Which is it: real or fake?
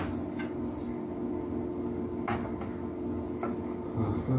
real